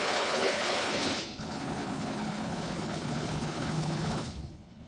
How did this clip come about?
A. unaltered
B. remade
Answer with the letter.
B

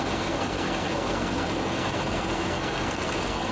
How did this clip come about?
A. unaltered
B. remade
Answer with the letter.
B